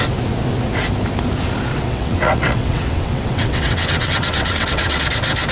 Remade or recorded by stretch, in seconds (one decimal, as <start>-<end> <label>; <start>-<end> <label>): 0.0-1.7 recorded; 1.7-5.0 remade; 5.0-5.5 recorded